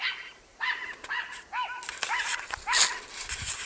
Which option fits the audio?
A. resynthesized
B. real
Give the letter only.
B